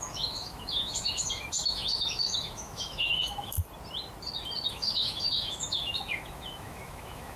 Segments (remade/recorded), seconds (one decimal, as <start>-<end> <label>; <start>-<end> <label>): 0.0-3.6 remade; 3.6-4.7 recorded; 4.7-7.4 remade